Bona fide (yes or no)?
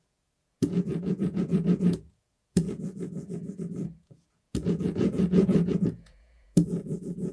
no